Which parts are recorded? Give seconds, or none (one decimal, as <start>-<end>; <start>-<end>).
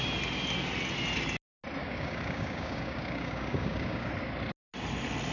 0.0-1.8; 4.1-5.3